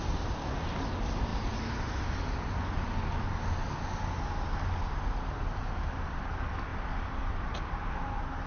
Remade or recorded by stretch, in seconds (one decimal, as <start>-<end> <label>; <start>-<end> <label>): 0.0-8.5 recorded